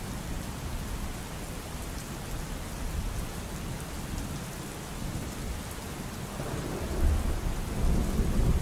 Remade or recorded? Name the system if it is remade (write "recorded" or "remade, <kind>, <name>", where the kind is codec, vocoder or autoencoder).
recorded